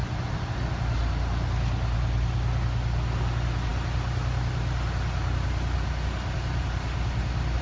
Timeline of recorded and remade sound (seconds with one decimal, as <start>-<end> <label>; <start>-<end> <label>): 0.0-7.6 recorded